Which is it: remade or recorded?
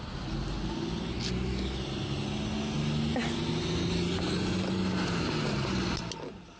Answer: recorded